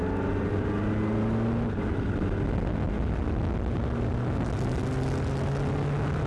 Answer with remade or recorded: recorded